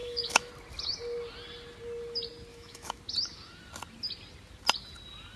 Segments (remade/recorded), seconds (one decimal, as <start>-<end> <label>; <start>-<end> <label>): 0.0-0.5 remade; 0.5-2.5 recorded; 2.5-3.0 remade; 3.0-5.4 recorded